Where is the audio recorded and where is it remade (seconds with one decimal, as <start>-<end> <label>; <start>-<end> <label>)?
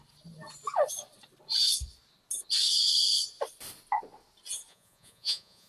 0.0-4.7 recorded; 4.7-5.7 remade